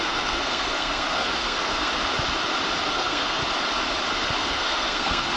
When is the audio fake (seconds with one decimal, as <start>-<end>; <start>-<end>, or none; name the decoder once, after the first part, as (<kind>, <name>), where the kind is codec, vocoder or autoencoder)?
0.0-1.9 (codec, SNAC); 2.9-3.4; 4.4-5.4